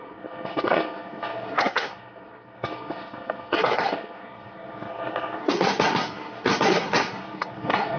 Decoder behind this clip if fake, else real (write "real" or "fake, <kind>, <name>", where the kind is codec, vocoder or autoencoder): fake, codec, SNAC